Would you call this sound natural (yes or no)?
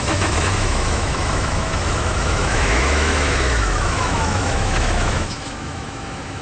no